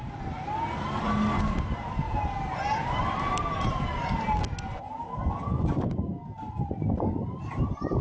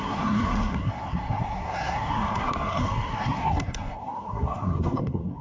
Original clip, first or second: first